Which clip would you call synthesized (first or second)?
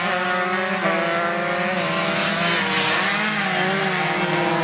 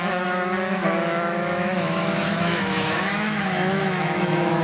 second